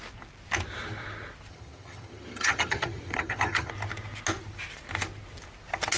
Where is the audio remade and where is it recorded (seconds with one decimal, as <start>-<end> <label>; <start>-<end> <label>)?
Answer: 0.0-1.5 recorded; 1.5-3.7 remade; 3.7-6.0 recorded